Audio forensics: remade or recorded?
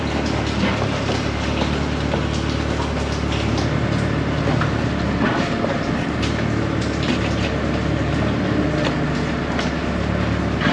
recorded